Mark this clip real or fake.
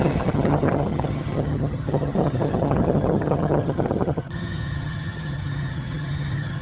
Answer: fake